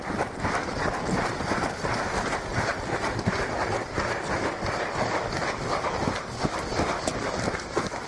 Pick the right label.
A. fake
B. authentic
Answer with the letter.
B